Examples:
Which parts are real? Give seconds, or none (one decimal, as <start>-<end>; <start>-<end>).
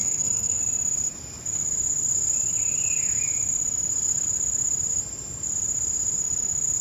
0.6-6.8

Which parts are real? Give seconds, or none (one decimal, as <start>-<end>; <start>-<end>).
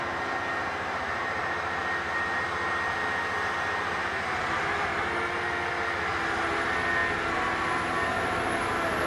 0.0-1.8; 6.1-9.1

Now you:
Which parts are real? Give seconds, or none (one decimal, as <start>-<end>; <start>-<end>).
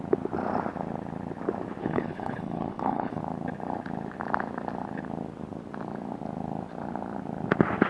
0.0-1.8; 3.2-7.9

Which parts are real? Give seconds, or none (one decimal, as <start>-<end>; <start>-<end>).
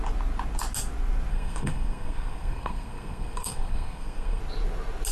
0.0-1.3; 4.4-5.1